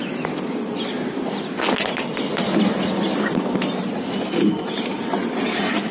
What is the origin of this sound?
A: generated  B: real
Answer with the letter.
B